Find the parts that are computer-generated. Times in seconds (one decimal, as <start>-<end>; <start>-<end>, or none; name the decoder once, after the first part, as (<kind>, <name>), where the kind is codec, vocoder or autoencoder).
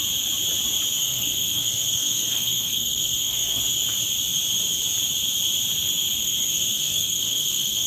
1.0-3.6 (codec, SNAC); 6.2-7.9